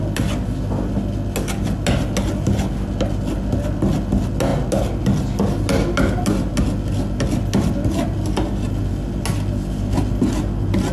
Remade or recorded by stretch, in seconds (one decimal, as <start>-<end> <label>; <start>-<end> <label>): 0.0-10.9 recorded